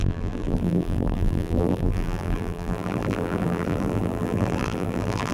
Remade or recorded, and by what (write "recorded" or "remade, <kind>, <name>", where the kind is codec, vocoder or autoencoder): remade, vocoder, BigVGAN v2